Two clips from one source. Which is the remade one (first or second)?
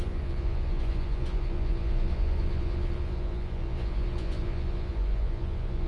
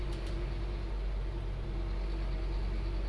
first